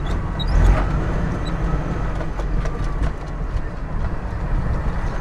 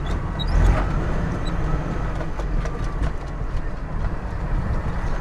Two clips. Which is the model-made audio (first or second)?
second